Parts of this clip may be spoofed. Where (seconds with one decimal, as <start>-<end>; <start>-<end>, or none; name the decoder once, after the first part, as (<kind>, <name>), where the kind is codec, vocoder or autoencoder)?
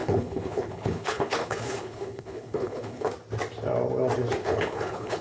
0.0-3.1 (codec, HILCodec); 4.4-5.2